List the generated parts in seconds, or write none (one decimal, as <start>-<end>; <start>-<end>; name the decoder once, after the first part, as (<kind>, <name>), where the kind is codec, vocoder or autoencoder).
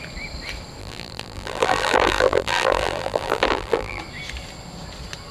0.8-4.0 (vocoder, BigVGAN v2)